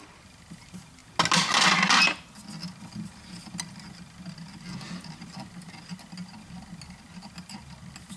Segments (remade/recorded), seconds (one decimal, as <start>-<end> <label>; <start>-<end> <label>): 0.0-8.2 recorded